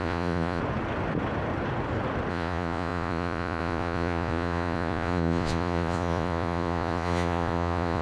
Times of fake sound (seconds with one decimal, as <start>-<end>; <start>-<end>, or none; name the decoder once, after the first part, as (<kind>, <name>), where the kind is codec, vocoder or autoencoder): 0.0-0.6 (vocoder, Vocos); 2.3-8.0